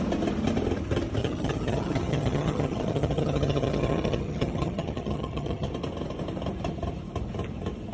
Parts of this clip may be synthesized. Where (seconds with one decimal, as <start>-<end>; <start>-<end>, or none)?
1.2-5.7